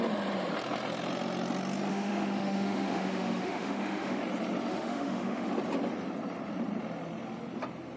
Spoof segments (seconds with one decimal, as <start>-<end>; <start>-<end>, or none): 1.9-4.2; 4.7-5.5